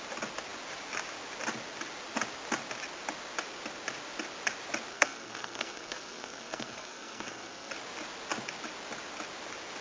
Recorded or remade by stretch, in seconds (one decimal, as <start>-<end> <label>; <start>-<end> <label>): 0.0-4.9 recorded; 4.9-7.7 remade; 7.7-9.8 recorded